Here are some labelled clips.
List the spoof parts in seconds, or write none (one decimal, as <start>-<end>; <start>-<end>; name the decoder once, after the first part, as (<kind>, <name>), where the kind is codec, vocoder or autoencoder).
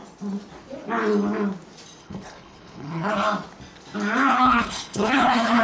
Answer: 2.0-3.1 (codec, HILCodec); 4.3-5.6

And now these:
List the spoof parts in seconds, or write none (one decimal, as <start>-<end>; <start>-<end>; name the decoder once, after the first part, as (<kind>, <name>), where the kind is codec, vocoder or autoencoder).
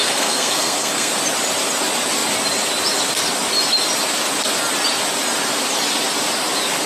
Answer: 0.0-1.1 (codec, SNAC)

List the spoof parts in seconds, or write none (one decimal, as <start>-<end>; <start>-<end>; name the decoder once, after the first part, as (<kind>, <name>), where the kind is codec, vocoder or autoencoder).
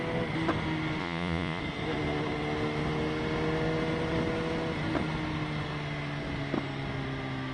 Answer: 1.0-1.6 (vocoder, Vocos)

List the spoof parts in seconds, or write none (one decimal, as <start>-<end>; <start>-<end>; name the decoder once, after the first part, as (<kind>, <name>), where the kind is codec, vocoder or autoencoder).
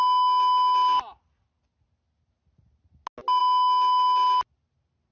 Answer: none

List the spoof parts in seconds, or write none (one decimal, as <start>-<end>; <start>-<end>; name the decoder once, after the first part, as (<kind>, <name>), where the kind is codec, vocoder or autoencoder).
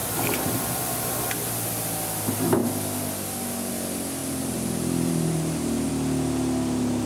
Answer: 0.0-1.3 (vocoder, BigVGAN v2); 4.2-5.9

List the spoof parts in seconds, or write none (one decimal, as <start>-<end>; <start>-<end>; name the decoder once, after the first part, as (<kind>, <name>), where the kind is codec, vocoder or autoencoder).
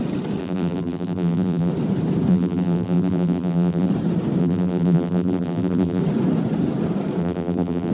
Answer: 0.4-1.7 (vocoder, BigVGAN v2); 2.3-3.9; 4.4-6.0; 7.2-7.9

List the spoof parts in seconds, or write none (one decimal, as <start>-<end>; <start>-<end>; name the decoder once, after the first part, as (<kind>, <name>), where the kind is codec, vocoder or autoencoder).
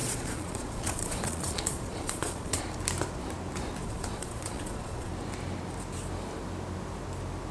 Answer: 0.0-2.6 (vocoder, Vocos); 3.8-5.1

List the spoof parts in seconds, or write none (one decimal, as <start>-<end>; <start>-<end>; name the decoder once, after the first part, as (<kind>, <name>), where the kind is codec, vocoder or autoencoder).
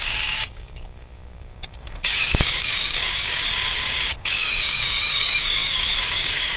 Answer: 0.0-6.6 (codec, DAC)